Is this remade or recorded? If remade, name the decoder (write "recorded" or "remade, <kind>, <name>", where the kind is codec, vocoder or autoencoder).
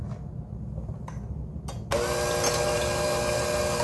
recorded